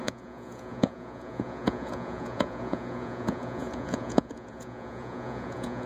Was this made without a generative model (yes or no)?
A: no